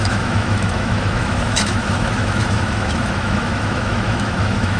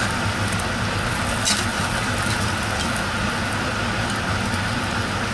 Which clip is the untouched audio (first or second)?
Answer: second